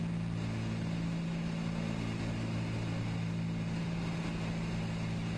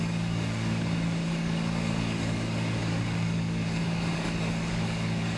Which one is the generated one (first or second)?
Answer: second